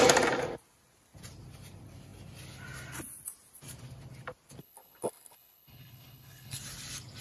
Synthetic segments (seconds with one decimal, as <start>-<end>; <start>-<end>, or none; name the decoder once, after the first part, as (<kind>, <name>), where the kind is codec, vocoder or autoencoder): 4.6-6.6 (codec, HILCodec)